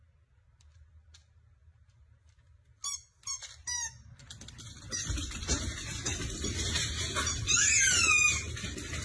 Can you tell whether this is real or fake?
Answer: real